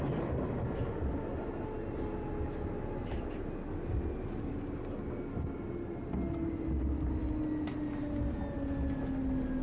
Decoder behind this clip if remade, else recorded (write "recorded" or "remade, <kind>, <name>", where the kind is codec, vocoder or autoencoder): recorded